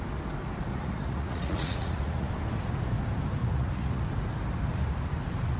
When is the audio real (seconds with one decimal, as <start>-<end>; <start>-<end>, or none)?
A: 0.0-0.7; 2.3-3.4; 4.0-5.6